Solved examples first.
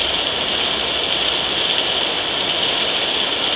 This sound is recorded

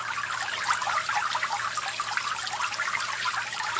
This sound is recorded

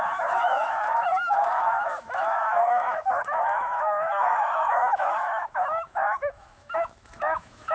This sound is remade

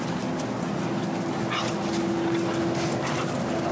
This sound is recorded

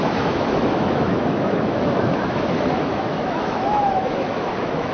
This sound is remade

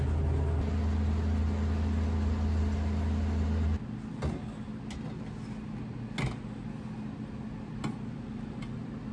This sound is recorded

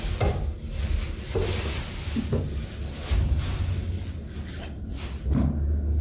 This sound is recorded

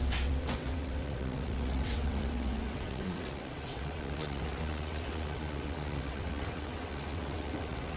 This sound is remade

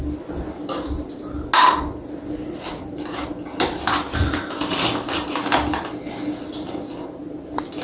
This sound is recorded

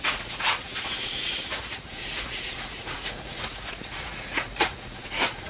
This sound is remade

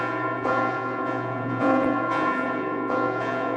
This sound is remade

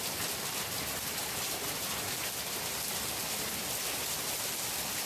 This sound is recorded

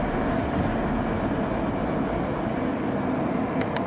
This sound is recorded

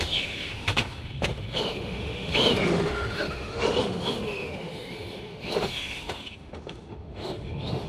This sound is remade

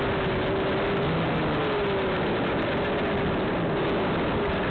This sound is recorded